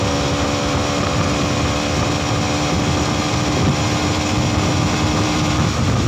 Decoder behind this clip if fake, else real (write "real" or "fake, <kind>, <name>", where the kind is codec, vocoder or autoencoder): real